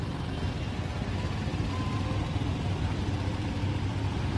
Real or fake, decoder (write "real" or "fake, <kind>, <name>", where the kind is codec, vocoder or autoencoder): real